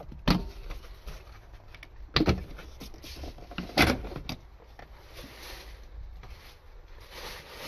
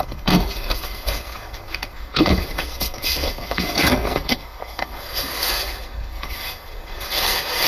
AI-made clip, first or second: second